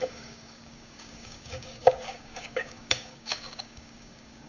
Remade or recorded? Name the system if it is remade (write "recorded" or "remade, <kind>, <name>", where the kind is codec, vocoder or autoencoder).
remade, codec, DAC